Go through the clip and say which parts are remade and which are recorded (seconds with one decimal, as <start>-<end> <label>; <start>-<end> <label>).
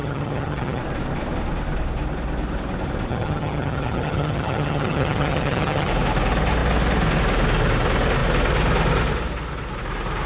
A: 0.0-0.8 remade; 0.8-3.1 recorded; 3.1-5.9 remade; 5.9-10.3 recorded